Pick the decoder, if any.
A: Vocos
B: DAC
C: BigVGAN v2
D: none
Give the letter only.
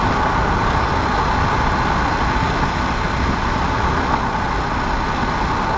D